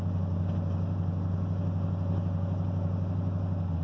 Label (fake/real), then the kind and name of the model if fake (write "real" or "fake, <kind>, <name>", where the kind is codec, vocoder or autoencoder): real